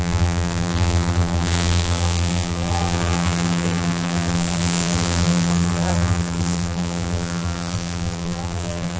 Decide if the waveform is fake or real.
fake